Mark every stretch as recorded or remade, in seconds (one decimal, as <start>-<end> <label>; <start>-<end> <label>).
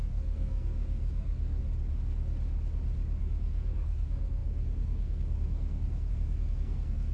0.0-1.6 remade; 1.6-3.2 recorded; 3.2-7.1 remade